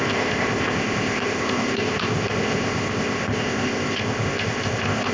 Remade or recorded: remade